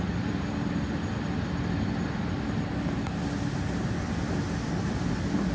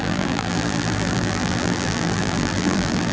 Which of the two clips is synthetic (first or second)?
second